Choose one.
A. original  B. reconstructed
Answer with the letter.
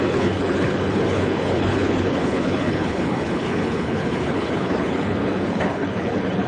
B